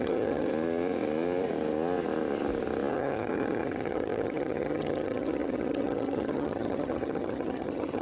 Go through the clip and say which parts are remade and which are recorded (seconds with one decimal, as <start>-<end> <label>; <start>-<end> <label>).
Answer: 0.0-0.5 remade; 0.5-2.9 recorded; 2.9-8.0 remade